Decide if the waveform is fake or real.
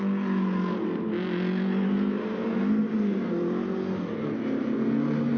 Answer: real